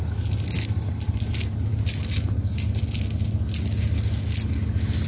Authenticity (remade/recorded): recorded